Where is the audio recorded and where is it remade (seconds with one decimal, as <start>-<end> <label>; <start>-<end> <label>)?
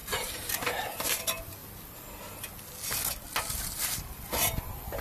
0.0-1.2 remade; 1.2-5.0 recorded